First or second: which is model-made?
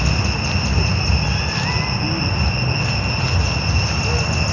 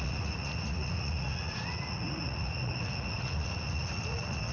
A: second